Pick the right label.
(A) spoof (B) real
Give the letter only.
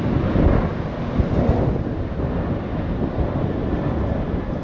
B